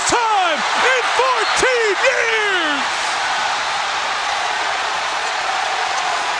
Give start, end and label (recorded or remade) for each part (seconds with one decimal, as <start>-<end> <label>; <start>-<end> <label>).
0.0-4.2 recorded; 4.2-6.4 remade